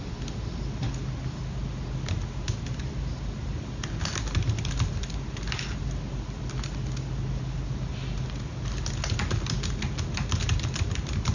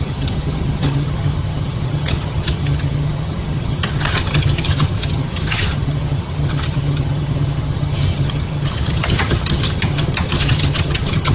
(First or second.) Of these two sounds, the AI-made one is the second